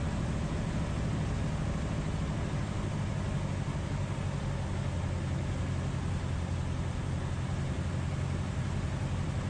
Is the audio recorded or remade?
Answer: recorded